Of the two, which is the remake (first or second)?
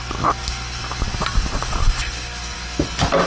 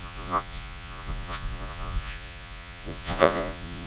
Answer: second